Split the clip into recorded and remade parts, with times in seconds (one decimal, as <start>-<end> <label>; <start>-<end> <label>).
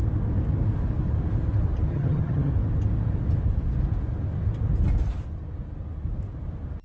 0.0-1.9 recorded; 1.9-2.5 remade; 2.5-6.8 recorded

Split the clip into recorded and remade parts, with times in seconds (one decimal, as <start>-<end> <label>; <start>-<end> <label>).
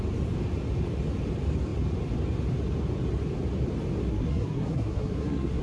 0.0-4.1 recorded; 4.1-5.6 remade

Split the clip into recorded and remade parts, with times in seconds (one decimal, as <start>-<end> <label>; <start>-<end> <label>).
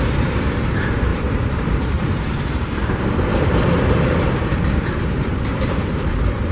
0.0-6.5 remade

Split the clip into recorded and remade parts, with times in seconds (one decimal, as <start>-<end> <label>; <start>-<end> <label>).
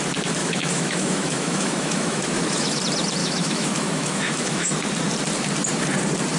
0.0-0.4 recorded; 0.4-2.8 remade; 2.8-3.2 recorded; 3.2-4.7 remade; 4.7-6.4 recorded